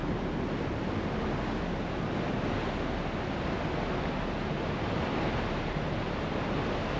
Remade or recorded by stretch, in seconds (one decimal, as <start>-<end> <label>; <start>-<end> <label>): 0.0-7.0 recorded